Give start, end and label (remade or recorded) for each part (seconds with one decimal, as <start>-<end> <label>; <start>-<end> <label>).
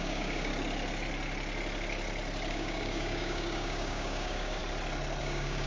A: 0.0-0.5 remade; 0.5-2.5 recorded; 2.5-4.6 remade; 4.6-5.2 recorded; 5.2-5.7 remade